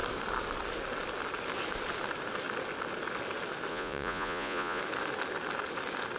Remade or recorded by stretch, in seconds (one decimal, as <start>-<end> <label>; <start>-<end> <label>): 0.0-3.7 recorded; 3.7-4.8 remade; 4.8-6.2 recorded